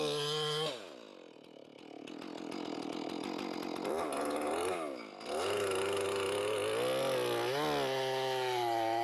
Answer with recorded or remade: recorded